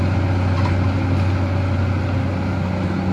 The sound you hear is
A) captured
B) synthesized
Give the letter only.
A